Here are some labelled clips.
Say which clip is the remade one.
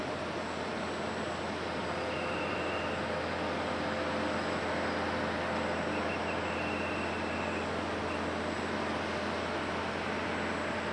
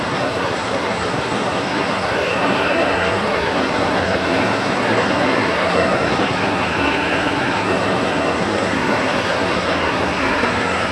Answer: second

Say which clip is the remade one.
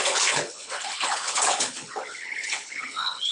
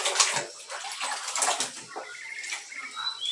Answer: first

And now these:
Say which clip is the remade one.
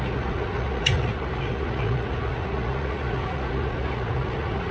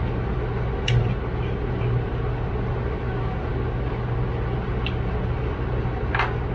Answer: first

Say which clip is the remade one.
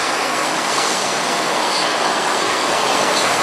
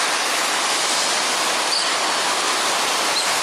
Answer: first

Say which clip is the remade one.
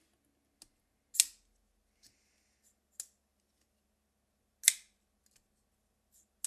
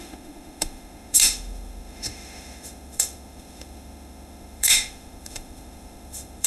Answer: second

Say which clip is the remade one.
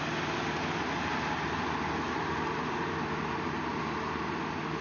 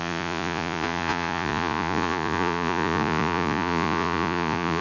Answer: second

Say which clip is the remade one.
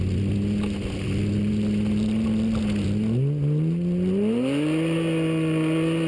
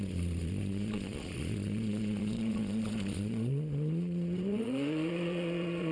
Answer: second